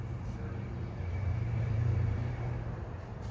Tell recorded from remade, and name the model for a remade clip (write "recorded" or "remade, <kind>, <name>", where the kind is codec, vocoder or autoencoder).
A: remade, vocoder, BigVGAN v2